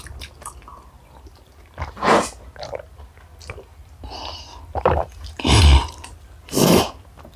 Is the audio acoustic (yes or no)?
no